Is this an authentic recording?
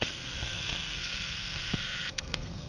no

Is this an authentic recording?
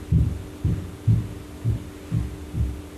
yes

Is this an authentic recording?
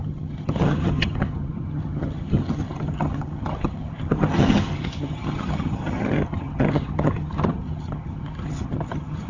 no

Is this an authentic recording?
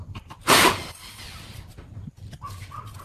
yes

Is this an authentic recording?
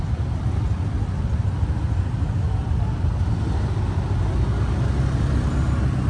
yes